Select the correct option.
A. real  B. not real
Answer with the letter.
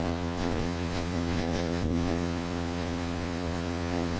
B